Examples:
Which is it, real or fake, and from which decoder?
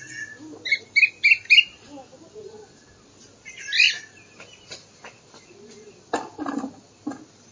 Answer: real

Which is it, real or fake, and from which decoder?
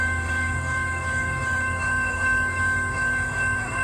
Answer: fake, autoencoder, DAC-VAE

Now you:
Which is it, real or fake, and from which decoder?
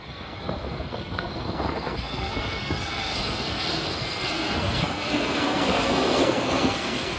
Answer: fake, codec, SNAC